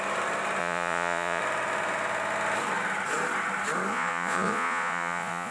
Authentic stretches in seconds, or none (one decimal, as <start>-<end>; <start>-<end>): 0.0-0.6; 1.4-3.9